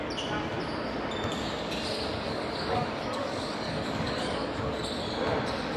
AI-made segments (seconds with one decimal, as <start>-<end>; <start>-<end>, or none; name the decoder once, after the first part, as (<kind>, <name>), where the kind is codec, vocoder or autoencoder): 1.3-4.8 (codec, DAC)